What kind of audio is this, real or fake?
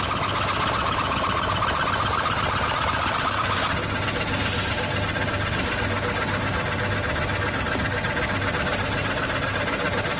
real